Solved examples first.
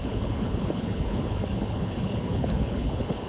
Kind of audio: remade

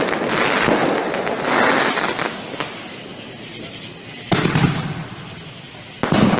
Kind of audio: recorded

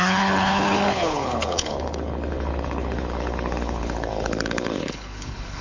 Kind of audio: remade